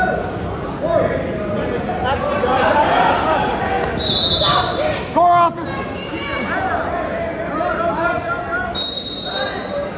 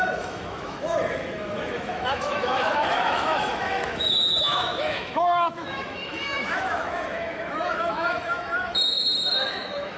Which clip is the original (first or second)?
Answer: first